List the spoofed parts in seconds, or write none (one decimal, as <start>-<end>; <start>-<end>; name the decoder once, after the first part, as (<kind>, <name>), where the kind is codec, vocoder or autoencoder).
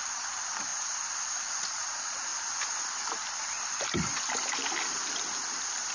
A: 0.0-0.7 (vocoder, BigVGAN v2); 1.4-2.3; 4.9-5.9